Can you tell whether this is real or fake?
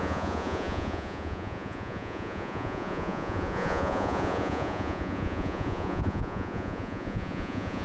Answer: fake